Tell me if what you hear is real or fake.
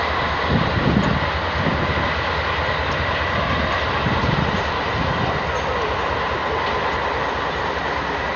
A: real